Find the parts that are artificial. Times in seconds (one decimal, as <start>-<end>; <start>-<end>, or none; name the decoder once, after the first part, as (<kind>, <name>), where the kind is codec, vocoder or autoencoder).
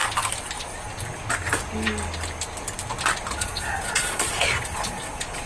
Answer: 3.3-5.5 (vocoder, Vocos)